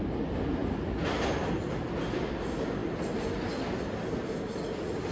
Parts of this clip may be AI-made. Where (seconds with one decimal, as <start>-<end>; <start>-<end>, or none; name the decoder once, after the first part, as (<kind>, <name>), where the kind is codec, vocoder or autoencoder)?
none